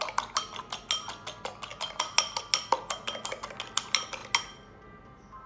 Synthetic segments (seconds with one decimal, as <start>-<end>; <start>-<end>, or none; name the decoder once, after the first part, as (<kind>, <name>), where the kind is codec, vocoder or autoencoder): none